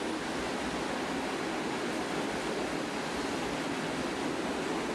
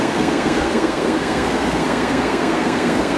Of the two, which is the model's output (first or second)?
second